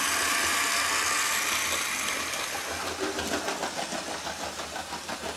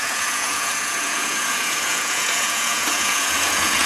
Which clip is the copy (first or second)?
second